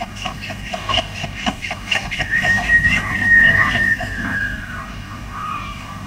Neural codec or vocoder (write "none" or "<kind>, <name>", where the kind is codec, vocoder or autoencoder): codec, DAC